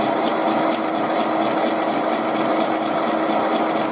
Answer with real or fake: real